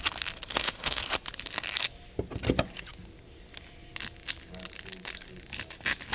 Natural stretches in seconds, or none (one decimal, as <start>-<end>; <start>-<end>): 0.0-0.5; 1.0-6.1